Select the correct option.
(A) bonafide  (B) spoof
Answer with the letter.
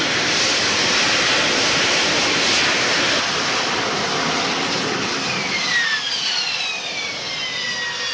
A